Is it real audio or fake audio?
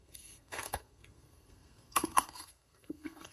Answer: fake